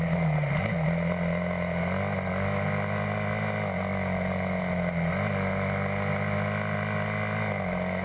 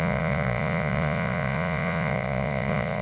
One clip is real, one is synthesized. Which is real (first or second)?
first